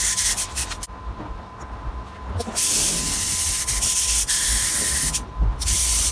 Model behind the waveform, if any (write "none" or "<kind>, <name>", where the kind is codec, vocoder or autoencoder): none